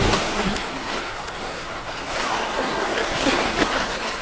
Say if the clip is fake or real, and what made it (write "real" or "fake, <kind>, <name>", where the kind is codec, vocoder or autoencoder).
fake, codec, SNAC